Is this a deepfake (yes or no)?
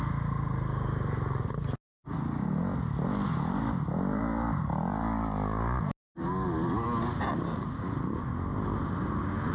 no